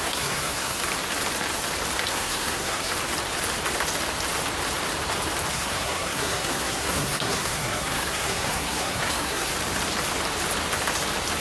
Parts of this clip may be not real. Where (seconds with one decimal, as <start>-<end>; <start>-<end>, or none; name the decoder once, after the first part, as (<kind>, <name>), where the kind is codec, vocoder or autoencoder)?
0.0-0.8 (codec, SNAC); 2.1-2.9; 5.5-9.5